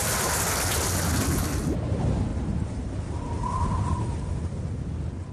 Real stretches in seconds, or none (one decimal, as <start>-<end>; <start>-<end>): 0.0-2.3; 3.6-5.3